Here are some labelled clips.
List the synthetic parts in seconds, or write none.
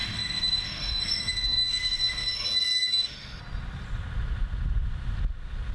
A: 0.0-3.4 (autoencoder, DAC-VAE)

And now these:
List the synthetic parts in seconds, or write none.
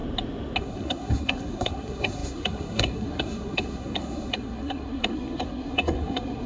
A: 0.6-6.5 (codec, SNAC)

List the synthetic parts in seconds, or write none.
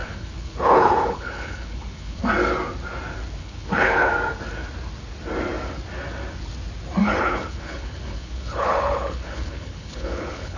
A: 0.0-2.2 (codec, HILCodec); 3.4-4.1; 7.0-10.6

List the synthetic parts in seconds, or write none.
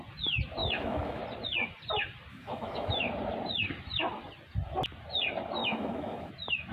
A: 0.6-1.2 (autoencoder, DAC-VAE); 2.3-3.0; 5.6-6.3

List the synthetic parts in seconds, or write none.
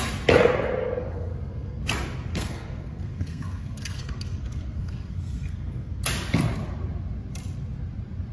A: 0.8-1.8 (codec, SNAC); 2.3-6.0